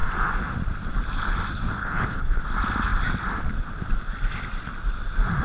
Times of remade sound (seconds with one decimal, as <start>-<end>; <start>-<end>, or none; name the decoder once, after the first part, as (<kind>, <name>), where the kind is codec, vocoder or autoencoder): 1.8-2.4 (codec, HILCodec)